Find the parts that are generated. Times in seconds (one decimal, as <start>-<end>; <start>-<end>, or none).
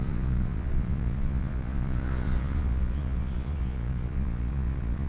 0.0-5.1